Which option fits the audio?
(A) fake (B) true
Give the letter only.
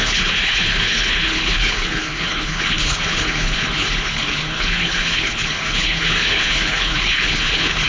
A